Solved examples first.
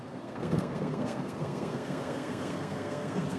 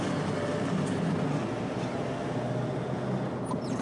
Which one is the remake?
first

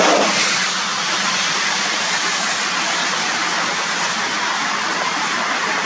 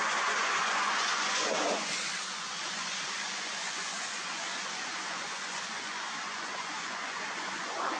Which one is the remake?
second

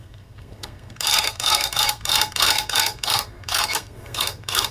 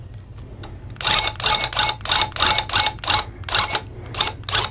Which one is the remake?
first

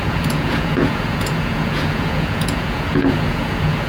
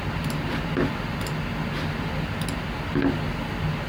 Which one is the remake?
first